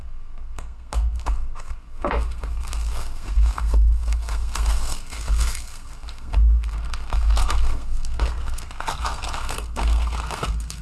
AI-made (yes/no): yes